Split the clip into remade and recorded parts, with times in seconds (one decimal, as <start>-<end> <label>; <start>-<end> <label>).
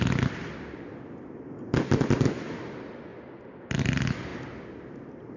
0.0-5.4 recorded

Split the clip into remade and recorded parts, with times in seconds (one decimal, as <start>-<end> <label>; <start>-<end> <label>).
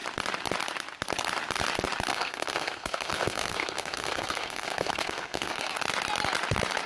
0.0-2.1 recorded; 2.1-5.7 remade; 5.7-6.9 recorded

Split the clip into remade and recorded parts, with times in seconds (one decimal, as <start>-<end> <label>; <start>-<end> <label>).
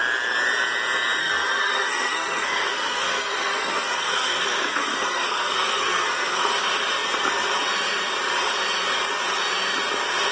0.0-1.2 recorded; 1.2-6.5 remade; 6.5-10.3 recorded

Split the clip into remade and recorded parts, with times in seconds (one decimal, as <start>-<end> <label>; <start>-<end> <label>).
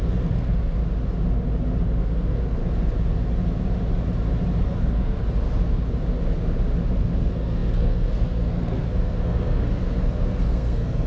0.0-0.8 remade; 0.8-2.0 recorded; 2.0-2.6 remade; 2.6-4.6 recorded; 4.6-5.2 remade; 5.2-7.0 recorded; 7.0-11.1 remade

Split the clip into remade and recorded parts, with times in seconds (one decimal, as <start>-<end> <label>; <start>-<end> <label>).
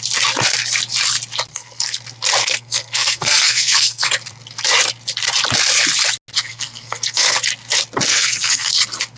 0.0-1.5 recorded; 1.5-2.0 remade; 2.0-2.4 recorded; 2.4-4.1 remade; 4.1-6.5 recorded; 6.5-7.4 remade; 7.4-8.1 recorded; 8.1-8.7 remade; 8.7-9.2 recorded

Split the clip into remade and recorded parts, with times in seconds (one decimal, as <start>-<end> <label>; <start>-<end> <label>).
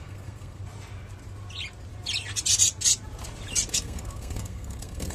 0.0-0.6 remade; 0.6-3.7 recorded; 3.7-5.1 remade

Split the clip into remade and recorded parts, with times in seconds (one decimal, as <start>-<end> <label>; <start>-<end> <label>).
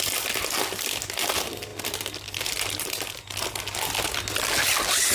0.0-5.1 recorded